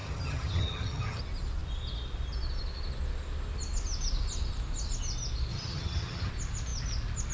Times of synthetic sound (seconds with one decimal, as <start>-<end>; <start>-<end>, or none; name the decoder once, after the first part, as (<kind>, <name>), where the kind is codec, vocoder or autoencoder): 0.0-1.2 (vocoder, HiFi-GAN); 5.5-6.3

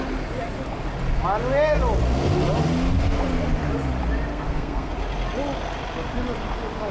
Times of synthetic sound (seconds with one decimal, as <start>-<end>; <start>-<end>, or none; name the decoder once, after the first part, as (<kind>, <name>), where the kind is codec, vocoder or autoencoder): 4.3-4.9 (codec, SNAC)